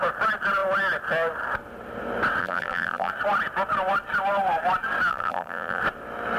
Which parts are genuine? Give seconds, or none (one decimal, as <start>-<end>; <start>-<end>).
0.0-2.4; 3.1-5.1; 5.8-6.4